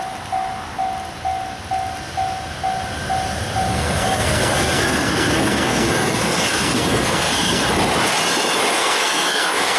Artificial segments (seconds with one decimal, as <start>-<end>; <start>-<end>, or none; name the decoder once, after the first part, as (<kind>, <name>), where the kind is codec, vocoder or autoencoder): 3.7-7.6 (codec, SNAC); 8.8-9.8